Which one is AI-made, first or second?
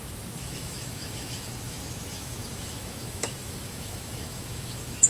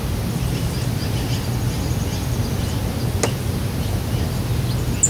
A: first